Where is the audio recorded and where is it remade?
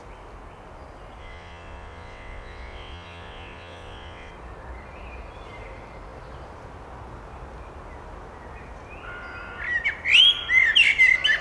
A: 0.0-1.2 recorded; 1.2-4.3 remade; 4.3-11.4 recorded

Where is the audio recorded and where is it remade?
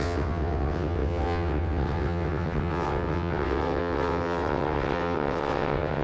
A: 0.0-6.0 remade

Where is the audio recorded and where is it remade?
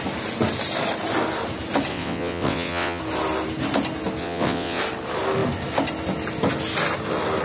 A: 0.0-1.9 recorded; 1.9-3.0 remade; 3.0-4.2 recorded; 4.2-4.8 remade; 4.8-7.4 recorded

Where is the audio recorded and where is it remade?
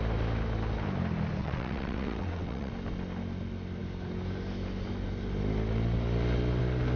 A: 0.0-1.4 recorded; 1.4-2.7 remade; 2.7-7.0 recorded